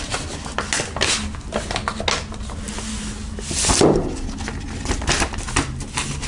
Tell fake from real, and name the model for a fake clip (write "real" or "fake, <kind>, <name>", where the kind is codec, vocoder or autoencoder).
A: real